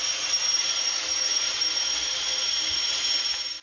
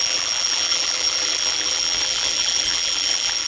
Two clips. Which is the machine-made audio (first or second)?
second